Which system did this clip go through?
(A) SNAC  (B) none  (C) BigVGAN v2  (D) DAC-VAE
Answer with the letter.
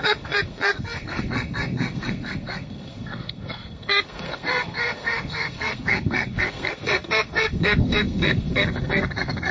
A